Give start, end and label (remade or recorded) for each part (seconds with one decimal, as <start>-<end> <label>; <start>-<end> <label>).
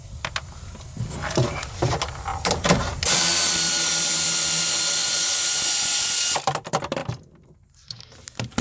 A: 0.0-5.0 recorded; 5.0-6.2 remade; 6.2-8.6 recorded